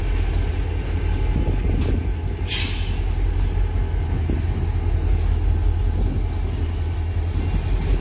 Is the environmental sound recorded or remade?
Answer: recorded